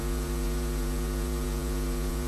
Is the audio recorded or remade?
remade